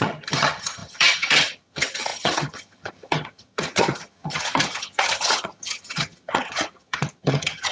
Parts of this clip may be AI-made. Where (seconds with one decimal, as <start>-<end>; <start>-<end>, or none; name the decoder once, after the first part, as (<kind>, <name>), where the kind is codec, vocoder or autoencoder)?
0.0-7.7 (vocoder, HiFi-GAN)